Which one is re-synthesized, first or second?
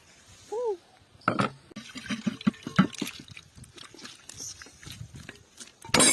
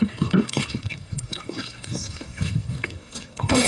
second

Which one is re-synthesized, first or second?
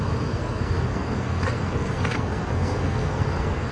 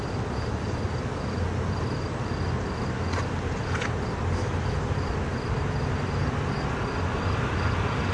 first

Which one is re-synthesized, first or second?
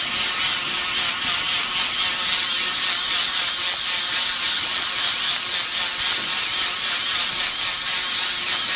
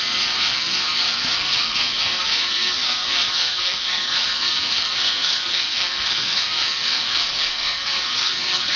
second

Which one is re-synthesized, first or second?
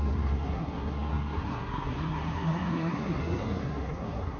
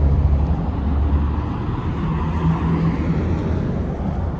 first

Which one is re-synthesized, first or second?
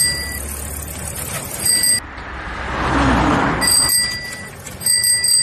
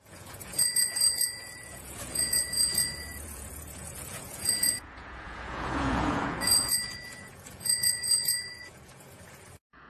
second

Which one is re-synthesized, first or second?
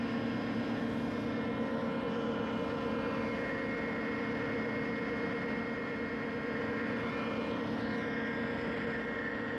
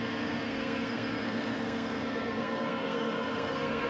second